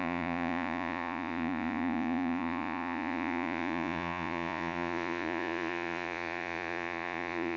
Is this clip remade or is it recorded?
remade